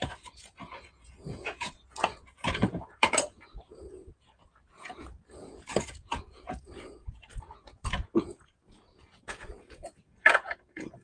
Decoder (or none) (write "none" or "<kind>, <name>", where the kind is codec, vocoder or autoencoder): vocoder, Vocos